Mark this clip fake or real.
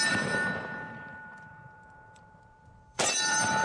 fake